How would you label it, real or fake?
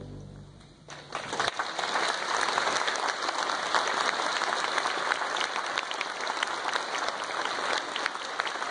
real